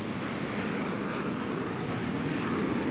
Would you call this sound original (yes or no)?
yes